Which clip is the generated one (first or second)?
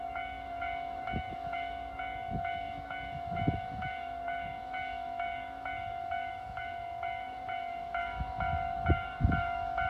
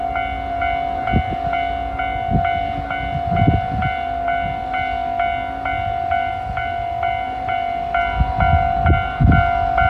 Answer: first